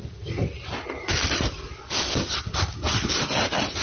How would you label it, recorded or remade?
recorded